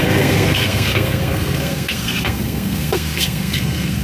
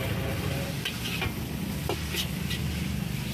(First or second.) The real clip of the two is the second